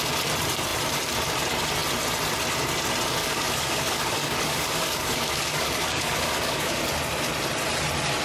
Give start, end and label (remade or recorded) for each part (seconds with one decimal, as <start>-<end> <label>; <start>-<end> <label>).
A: 0.0-3.2 recorded; 3.2-6.8 remade; 6.8-8.2 recorded